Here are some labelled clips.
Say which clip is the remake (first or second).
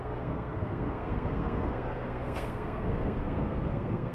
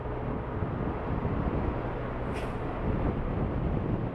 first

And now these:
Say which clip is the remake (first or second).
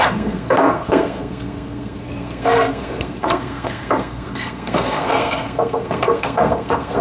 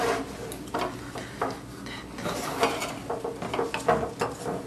first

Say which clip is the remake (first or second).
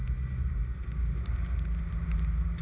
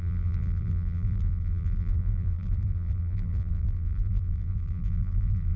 second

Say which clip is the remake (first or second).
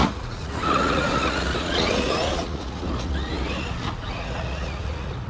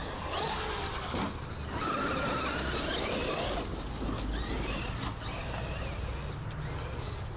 first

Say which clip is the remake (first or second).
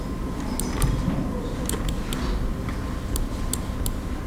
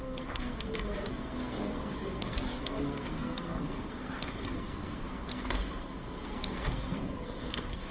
second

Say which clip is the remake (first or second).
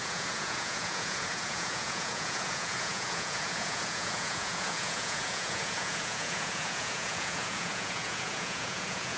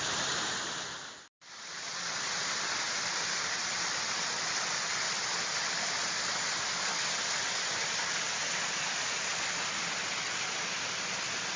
first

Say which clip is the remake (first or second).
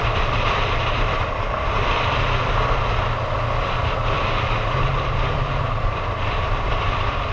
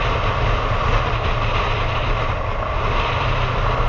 first